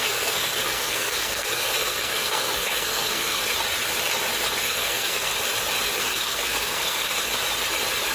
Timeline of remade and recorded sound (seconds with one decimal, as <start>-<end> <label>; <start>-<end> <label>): 0.0-3.4 remade; 3.4-4.6 recorded; 4.6-5.3 remade; 5.3-6.0 recorded; 6.0-7.3 remade; 7.3-8.1 recorded